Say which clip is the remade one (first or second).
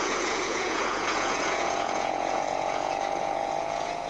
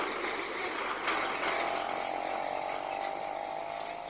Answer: first